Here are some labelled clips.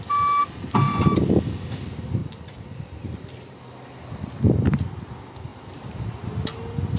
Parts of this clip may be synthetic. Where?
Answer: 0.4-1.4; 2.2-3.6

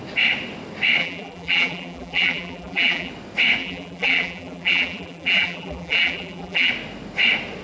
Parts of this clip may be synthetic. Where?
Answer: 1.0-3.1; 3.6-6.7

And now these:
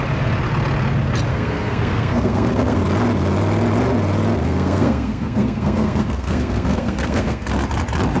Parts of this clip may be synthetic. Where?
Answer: 1.3-2.8; 4.4-7.5

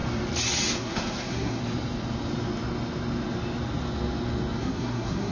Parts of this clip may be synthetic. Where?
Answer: 0.7-1.6; 4.6-5.3

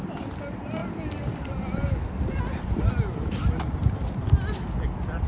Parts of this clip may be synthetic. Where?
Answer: 0.8-2.9

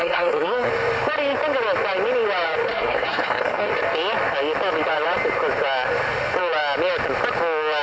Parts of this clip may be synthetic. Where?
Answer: 0.0-0.7; 2.7-3.7

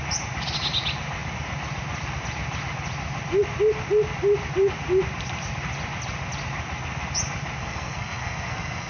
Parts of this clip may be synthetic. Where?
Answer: 7.6-8.9